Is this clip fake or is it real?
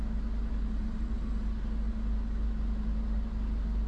real